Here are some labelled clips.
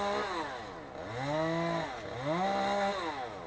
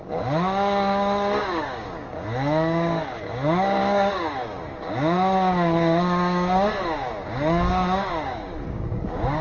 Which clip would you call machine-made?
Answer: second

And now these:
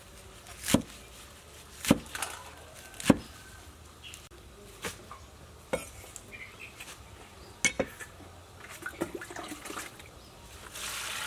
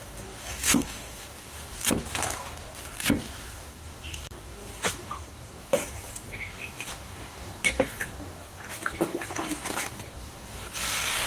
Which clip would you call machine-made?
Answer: second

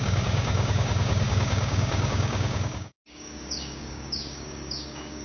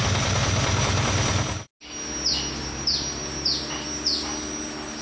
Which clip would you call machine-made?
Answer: first